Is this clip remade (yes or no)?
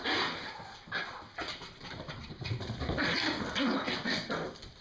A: yes